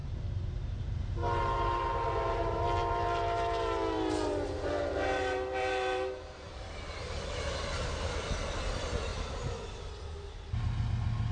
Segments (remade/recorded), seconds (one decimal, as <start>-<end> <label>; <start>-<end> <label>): 0.0-2.1 remade; 2.1-2.8 recorded; 2.8-7.9 remade; 7.9-11.3 recorded